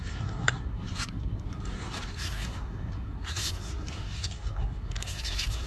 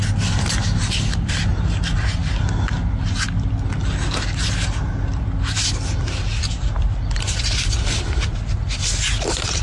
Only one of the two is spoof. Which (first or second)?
first